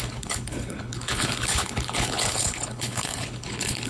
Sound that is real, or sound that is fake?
fake